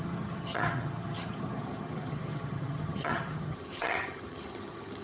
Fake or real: fake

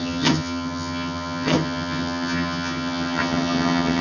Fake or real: fake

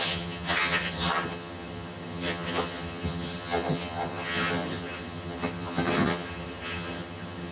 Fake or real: fake